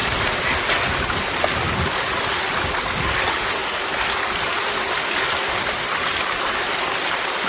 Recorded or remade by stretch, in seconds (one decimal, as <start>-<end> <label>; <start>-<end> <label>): 0.0-7.5 recorded